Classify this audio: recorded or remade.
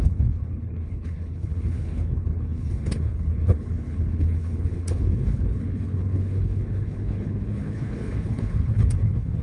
remade